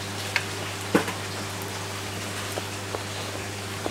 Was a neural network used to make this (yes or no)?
no